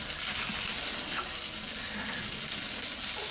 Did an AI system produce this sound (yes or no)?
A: no